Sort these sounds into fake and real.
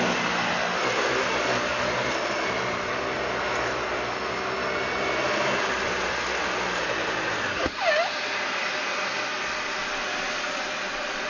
real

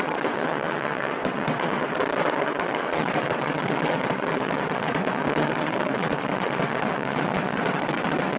fake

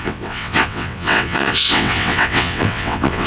fake